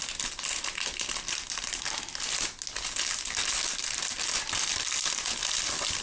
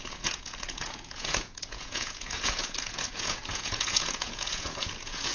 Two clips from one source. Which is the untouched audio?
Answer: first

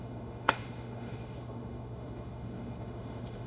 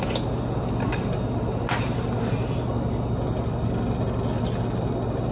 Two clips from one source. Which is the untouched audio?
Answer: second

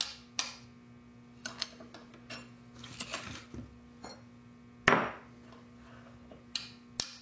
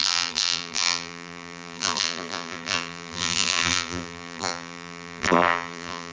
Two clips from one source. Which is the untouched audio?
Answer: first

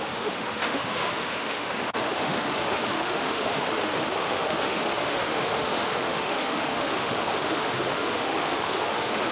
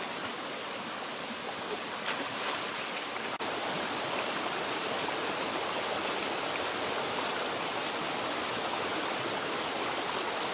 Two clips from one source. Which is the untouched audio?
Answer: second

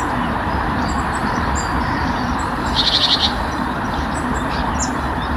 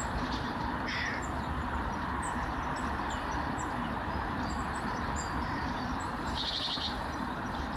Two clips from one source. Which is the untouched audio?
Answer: first